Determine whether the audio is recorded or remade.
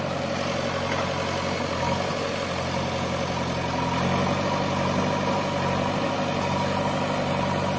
recorded